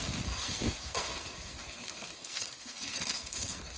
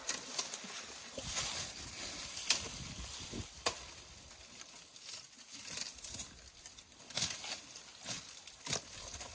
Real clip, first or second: second